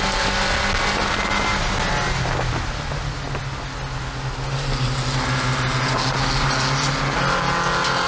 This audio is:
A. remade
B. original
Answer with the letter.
B